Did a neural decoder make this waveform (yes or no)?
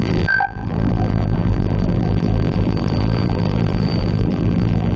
yes